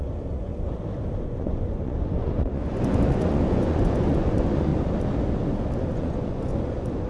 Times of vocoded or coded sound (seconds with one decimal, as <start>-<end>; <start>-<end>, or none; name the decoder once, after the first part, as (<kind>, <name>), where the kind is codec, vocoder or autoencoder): 0.0-0.5 (vocoder, Vocos); 1.2-4.7; 5.8-7.1